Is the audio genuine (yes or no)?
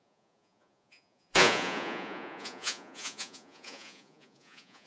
no